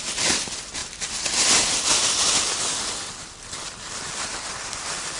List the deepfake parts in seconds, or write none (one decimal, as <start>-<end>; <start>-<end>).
none